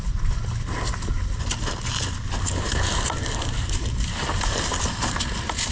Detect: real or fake real